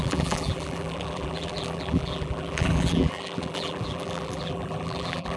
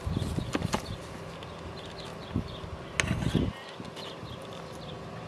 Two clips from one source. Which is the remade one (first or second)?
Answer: first